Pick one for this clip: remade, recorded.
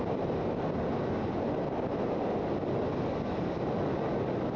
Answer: recorded